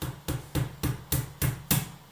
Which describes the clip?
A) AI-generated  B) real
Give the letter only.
B